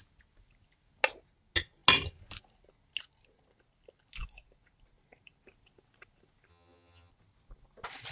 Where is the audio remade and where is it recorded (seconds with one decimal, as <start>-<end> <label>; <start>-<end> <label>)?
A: 0.0-6.5 recorded; 6.5-7.1 remade; 7.1-8.1 recorded